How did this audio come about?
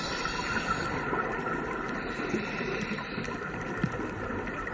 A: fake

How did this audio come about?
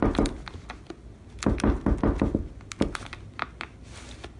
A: real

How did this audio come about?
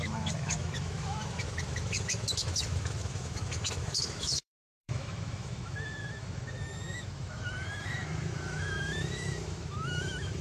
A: fake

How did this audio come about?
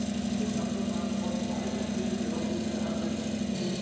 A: real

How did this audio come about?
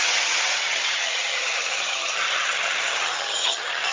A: fake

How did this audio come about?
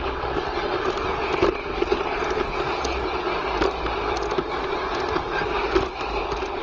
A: real